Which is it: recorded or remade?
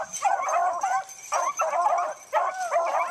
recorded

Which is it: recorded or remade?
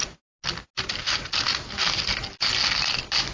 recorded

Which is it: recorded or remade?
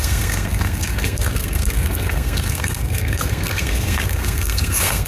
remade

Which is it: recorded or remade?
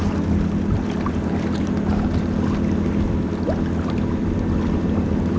recorded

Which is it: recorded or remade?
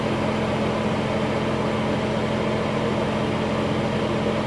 remade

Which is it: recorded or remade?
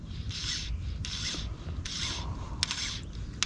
recorded